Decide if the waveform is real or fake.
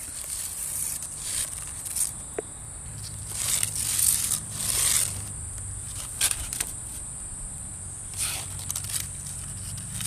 fake